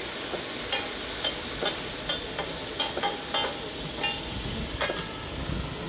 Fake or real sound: real